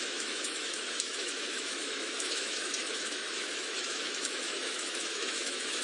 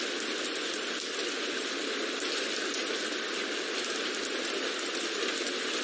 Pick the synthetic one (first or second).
first